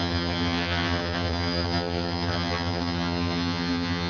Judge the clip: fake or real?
fake